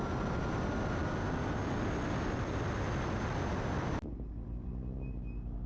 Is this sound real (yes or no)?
yes